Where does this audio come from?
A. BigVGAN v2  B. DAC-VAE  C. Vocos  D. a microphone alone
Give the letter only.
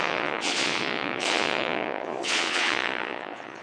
C